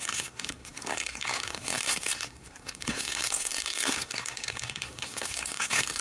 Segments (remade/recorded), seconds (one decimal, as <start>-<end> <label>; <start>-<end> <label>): 0.0-6.0 remade